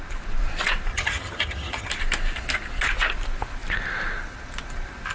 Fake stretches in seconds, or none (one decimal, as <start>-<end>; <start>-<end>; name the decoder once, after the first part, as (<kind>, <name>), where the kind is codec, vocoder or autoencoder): 0.9-1.9 (vocoder, HiFi-GAN)